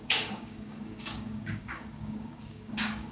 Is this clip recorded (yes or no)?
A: no